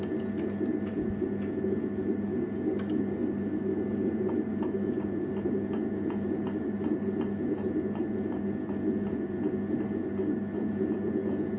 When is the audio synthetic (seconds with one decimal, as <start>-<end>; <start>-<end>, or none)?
none

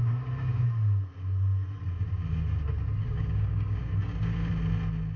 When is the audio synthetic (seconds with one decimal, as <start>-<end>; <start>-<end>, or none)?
3.0-4.5

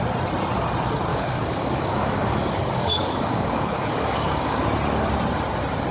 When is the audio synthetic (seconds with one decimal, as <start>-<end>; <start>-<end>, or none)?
1.1-4.6

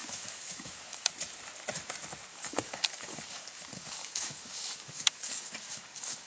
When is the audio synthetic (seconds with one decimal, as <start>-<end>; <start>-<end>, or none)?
0.0-1.1; 2.3-6.3

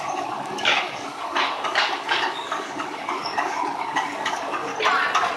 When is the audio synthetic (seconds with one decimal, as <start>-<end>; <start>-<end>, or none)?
0.0-4.7